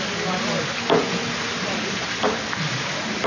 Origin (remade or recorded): recorded